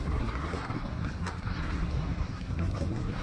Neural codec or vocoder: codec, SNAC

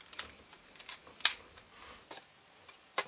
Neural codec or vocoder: none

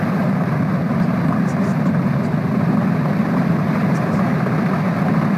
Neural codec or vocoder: none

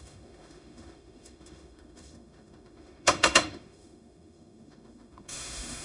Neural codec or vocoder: autoencoder, DAC-VAE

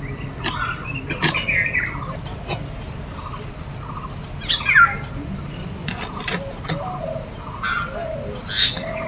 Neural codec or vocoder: none